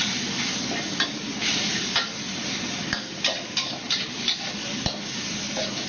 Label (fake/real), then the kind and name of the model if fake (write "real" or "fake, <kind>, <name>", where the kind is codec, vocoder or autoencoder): real